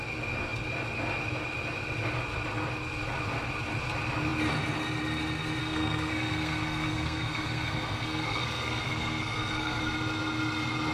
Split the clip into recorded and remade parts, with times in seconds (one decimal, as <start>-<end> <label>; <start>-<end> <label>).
0.0-5.6 recorded; 5.6-9.8 remade; 9.8-10.9 recorded